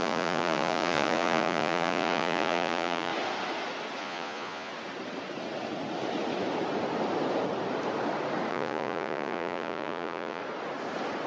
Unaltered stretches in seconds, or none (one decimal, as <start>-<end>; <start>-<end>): 3.1-4.0; 4.7-8.5; 10.4-11.3